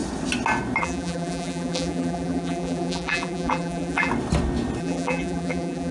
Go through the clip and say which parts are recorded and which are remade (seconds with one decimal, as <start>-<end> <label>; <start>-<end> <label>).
0.0-0.8 recorded; 0.8-4.1 remade; 4.1-4.8 recorded; 4.8-5.9 remade